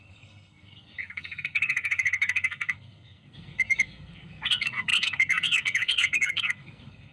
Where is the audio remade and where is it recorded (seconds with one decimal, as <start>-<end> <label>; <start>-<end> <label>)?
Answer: 0.0-7.1 remade